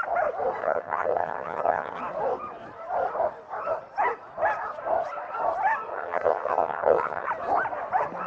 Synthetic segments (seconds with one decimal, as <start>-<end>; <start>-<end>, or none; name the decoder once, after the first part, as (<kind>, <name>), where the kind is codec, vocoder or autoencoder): 0.6-2.0 (vocoder, HiFi-GAN); 5.9-7.3